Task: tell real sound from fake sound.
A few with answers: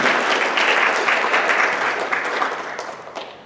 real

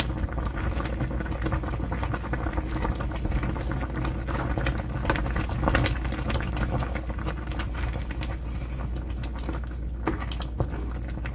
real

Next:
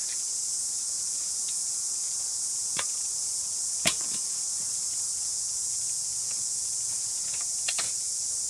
fake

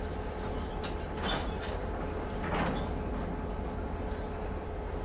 real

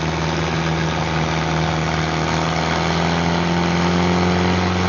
real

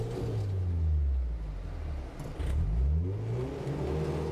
real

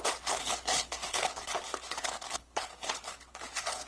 fake